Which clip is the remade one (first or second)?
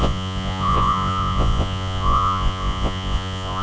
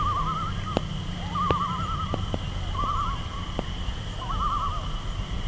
first